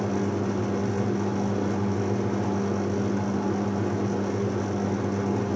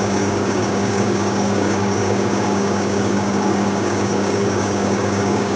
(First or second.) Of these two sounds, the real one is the first